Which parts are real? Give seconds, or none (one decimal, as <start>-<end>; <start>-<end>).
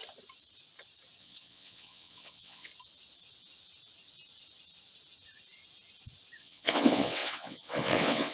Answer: 0.0-1.2; 2.7-6.4